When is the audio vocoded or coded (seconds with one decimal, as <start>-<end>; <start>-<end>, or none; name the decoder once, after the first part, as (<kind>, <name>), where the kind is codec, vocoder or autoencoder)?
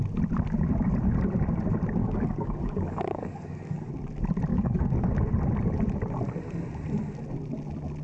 2.0-3.9 (codec, DAC); 4.5-5.1